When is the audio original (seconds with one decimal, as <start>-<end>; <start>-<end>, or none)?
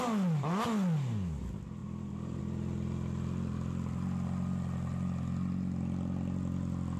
0.0-1.8; 2.4-7.0